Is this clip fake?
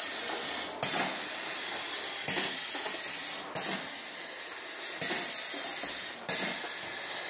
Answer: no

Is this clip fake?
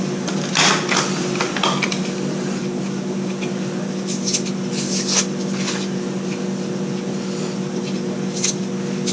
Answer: no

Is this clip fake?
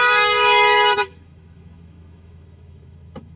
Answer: yes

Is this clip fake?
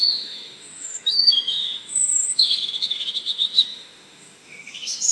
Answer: yes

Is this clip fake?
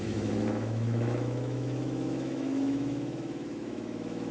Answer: yes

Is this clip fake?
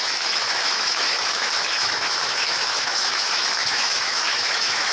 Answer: yes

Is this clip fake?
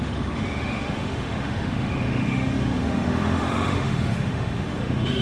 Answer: yes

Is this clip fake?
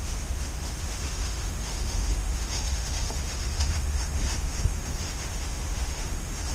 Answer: yes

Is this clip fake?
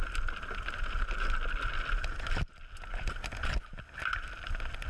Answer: no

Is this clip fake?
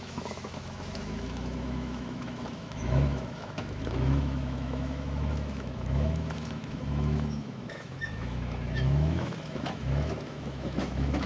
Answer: yes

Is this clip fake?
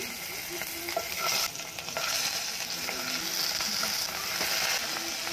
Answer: no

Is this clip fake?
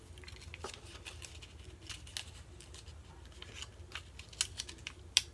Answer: no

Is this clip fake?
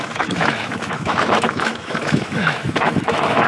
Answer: yes